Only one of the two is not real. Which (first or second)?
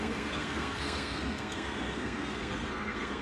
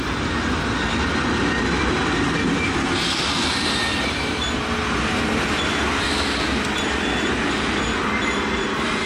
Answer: first